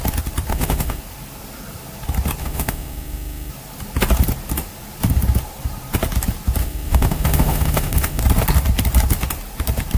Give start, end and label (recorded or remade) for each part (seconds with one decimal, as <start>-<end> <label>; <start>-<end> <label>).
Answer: 0.0-0.5 recorded; 0.5-1.0 remade; 1.0-2.4 recorded; 2.4-3.5 remade; 3.5-6.6 recorded; 6.6-8.2 remade; 8.2-10.0 recorded